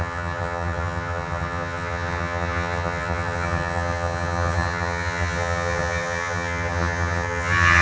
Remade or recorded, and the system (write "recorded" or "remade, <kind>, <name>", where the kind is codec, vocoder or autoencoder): remade, vocoder, HiFi-GAN